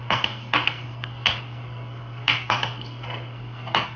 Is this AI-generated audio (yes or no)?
yes